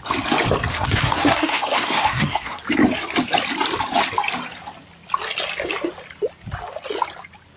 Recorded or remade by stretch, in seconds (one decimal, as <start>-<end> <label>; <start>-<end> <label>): 0.0-0.7 recorded; 0.7-2.6 remade; 2.6-7.6 recorded